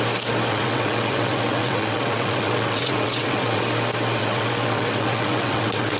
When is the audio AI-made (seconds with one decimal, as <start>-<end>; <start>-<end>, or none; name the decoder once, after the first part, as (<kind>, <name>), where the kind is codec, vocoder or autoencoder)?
0.5-3.6 (vocoder, WaveNeXt); 4.2-6.0